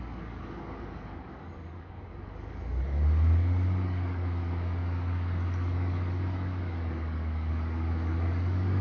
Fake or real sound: fake